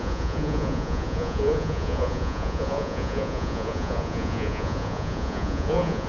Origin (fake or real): fake